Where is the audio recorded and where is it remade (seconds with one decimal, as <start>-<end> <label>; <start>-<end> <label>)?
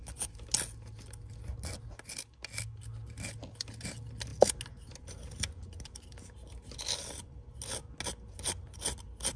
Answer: 0.0-9.4 recorded